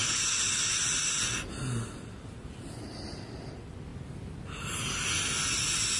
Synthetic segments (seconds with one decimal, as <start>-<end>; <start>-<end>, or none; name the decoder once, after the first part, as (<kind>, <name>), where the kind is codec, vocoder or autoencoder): none